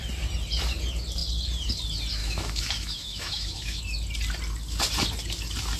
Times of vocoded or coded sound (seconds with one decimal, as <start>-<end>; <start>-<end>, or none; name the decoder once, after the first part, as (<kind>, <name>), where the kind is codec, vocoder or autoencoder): 2.2-3.8 (autoencoder, DAC-VAE)

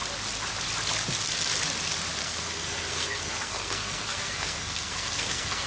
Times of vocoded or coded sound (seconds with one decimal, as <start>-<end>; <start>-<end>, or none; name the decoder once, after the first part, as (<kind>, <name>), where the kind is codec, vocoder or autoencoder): 2.2-5.7 (codec, SNAC)

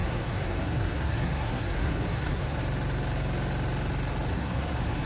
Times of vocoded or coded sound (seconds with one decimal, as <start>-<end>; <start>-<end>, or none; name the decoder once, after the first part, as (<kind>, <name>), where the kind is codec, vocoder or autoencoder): 0.0-2.6 (codec, SNAC); 4.3-5.1